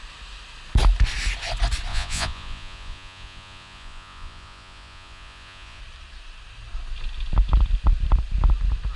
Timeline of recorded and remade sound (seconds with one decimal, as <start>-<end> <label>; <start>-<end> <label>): 0.0-1.9 recorded; 1.9-5.8 remade; 5.8-9.0 recorded